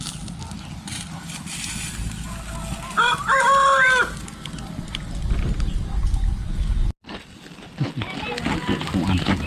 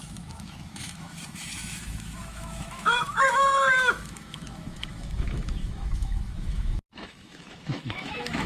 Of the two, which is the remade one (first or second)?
second